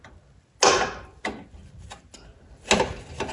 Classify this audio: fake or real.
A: real